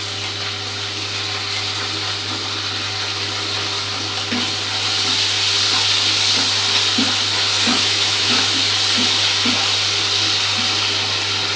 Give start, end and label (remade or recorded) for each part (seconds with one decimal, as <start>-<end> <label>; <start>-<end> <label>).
0.0-7.7 recorded; 7.7-8.3 remade; 8.3-11.6 recorded